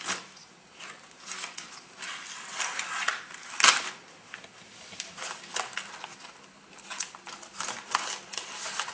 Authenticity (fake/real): real